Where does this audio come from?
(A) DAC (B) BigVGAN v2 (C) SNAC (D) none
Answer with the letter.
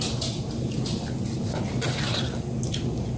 D